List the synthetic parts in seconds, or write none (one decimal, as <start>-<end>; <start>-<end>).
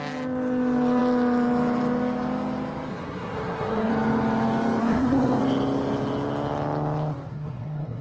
2.9-3.9; 4.8-5.4; 7.3-8.0